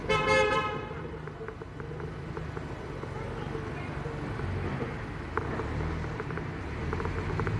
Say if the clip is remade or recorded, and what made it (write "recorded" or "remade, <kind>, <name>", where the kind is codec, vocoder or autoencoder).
recorded